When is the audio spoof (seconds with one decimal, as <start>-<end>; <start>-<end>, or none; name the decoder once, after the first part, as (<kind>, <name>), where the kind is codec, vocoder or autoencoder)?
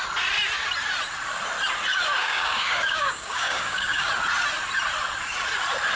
2.2-4.1 (codec, DAC)